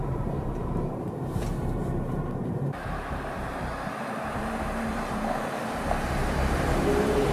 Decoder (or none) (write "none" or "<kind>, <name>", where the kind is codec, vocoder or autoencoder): vocoder, BigVGAN v2